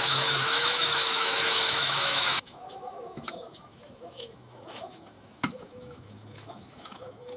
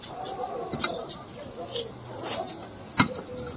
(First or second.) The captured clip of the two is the second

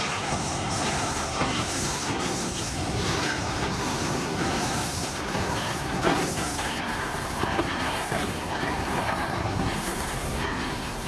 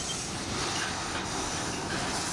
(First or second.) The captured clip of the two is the second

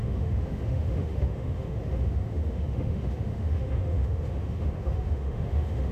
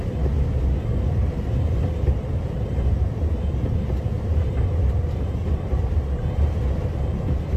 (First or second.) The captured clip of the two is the second